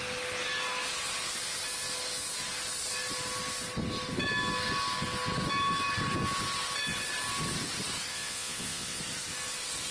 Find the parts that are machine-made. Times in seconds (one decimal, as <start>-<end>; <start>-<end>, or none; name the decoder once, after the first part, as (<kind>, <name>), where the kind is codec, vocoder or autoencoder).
8.1-9.0 (vocoder, Vocos)